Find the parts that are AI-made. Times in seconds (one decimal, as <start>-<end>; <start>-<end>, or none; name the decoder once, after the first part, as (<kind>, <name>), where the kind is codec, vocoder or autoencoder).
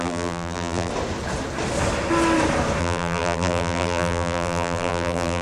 0.0-0.9 (vocoder, BigVGAN v2); 2.8-5.4